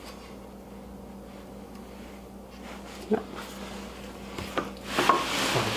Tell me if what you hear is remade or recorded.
recorded